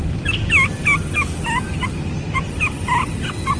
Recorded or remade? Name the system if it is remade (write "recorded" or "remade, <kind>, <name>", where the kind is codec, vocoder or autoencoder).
recorded